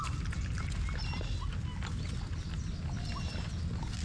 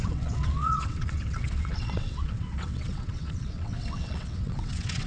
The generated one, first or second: second